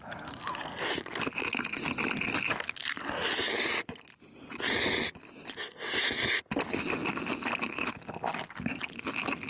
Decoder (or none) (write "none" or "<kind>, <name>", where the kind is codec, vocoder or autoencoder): none